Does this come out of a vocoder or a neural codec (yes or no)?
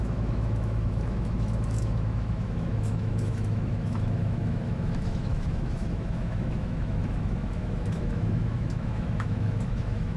yes